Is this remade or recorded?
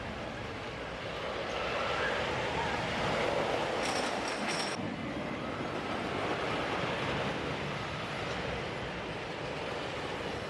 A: recorded